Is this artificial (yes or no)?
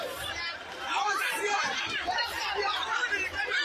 yes